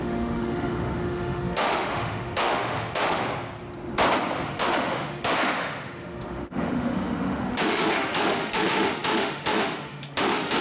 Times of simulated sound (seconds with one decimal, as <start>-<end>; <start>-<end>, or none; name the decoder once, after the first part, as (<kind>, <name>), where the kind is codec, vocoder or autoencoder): 0.0-3.2 (autoencoder, DAC-VAE); 4.5-10.6